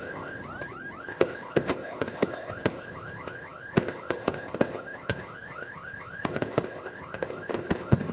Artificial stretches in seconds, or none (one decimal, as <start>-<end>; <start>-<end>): 0.0-0.4; 1.0-8.1